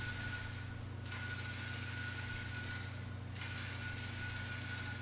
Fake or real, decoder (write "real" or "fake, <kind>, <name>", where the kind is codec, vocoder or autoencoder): real